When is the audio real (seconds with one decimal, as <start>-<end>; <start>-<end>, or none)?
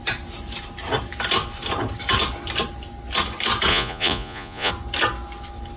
0.0-3.7; 4.7-5.8